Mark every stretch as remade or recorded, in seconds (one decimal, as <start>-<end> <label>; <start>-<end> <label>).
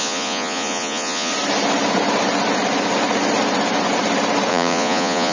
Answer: 0.0-1.3 remade; 1.3-4.5 recorded; 4.5-5.3 remade